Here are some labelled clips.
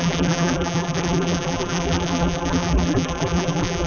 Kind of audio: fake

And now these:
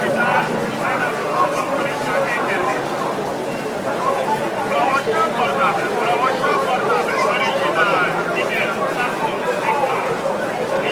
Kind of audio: fake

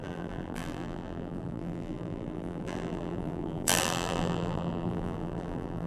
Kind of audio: fake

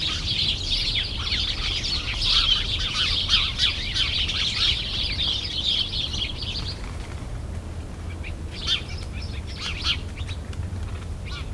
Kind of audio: fake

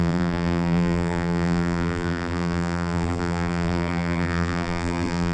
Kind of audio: fake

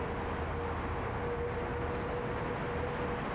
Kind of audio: real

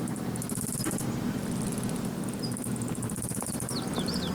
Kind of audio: real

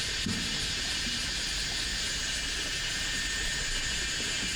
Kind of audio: real